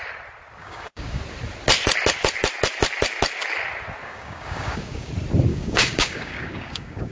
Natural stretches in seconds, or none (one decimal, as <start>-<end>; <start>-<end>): 0.0-0.6; 1.2-4.0; 5.1-5.5